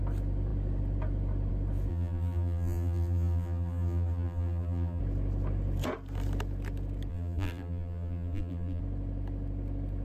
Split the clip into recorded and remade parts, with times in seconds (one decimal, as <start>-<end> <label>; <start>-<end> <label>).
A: 0.0-1.9 recorded; 1.9-5.0 remade; 5.0-7.1 recorded; 7.1-8.8 remade; 8.8-10.0 recorded